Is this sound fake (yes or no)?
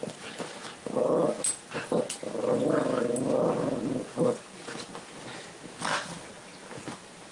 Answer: no